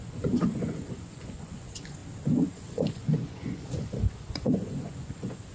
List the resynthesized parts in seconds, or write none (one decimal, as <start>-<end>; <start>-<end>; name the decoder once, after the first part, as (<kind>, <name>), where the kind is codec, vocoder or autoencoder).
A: 0.0-2.0 (vocoder, Vocos); 2.5-5.5